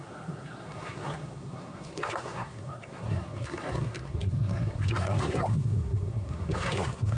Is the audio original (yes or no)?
no